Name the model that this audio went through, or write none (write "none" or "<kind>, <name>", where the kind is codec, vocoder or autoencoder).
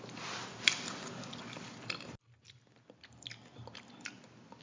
none